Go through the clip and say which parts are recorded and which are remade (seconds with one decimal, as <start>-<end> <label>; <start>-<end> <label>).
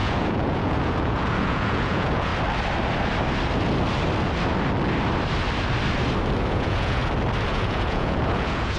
0.0-2.3 remade; 2.3-6.5 recorded; 6.5-7.0 remade; 7.0-7.5 recorded; 7.5-8.8 remade